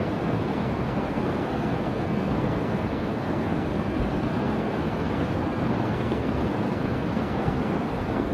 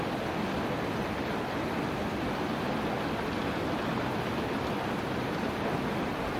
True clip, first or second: second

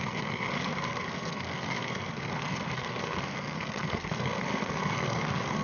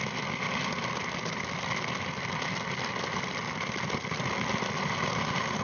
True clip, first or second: second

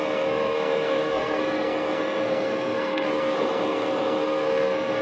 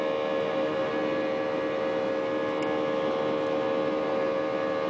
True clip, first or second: second